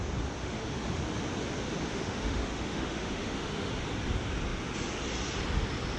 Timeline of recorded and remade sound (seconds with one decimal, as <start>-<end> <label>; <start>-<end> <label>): 0.0-0.4 recorded; 0.4-1.0 remade; 1.0-1.9 recorded; 1.9-3.7 remade; 3.7-6.0 recorded